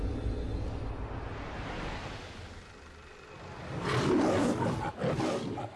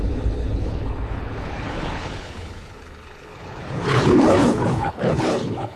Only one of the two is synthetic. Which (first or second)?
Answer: second